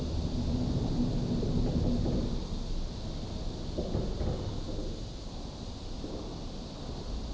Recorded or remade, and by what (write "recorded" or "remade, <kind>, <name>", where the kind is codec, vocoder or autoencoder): recorded